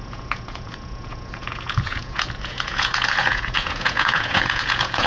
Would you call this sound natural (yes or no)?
no